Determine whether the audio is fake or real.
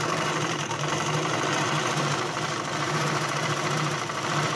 fake